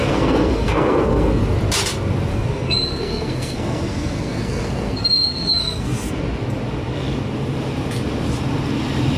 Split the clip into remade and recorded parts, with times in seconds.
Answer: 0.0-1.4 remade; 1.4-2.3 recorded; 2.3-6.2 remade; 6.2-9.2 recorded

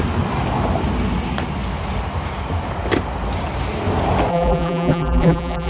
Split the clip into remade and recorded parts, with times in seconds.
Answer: 0.0-4.3 recorded; 4.3-5.7 remade

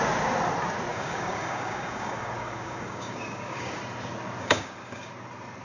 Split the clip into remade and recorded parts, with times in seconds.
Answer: 0.0-0.9 recorded; 0.9-3.8 remade; 3.8-4.4 recorded; 4.4-5.1 remade; 5.1-5.6 recorded

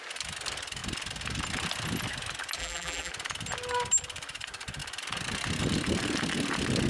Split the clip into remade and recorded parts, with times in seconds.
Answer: 0.0-2.6 recorded; 2.6-3.1 remade; 3.1-6.9 recorded

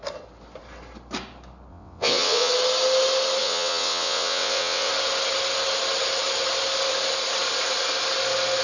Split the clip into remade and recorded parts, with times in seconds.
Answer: 0.0-1.7 recorded; 1.7-2.5 remade; 2.5-3.4 recorded; 3.4-4.9 remade; 4.9-8.6 recorded

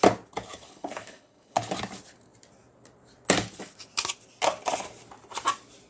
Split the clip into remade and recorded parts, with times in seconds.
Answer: 0.0-0.5 recorded; 0.5-1.7 remade; 1.7-5.9 recorded